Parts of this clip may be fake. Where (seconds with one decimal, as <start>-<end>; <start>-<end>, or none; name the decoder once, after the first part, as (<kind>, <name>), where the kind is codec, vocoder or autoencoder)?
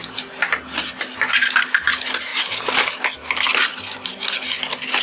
none